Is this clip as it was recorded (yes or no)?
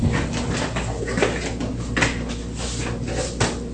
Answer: yes